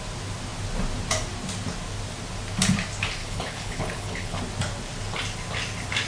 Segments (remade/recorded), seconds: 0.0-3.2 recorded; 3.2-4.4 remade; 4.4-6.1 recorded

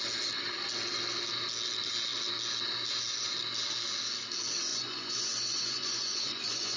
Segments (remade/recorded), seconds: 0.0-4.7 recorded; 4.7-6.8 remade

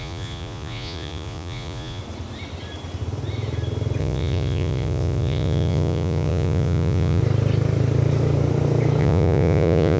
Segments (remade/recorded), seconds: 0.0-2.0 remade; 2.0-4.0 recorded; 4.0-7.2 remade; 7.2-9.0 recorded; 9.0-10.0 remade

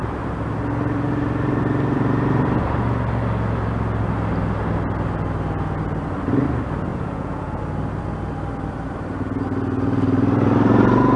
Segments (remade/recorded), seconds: 0.0-6.9 recorded; 6.9-7.6 remade; 7.6-11.2 recorded

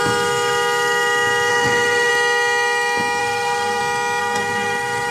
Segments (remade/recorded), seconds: 0.0-1.5 recorded; 1.5-2.1 remade; 2.1-3.2 recorded; 3.2-3.8 remade; 3.8-4.2 recorded; 4.2-5.1 remade

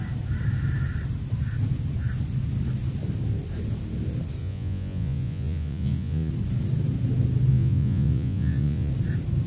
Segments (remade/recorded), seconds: 0.0-4.4 recorded; 4.4-6.3 remade; 6.3-7.5 recorded; 7.5-8.9 remade; 8.9-9.5 recorded